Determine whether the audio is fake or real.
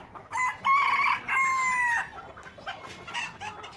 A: real